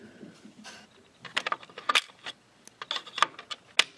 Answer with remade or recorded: recorded